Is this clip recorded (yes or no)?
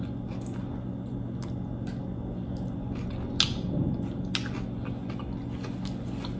yes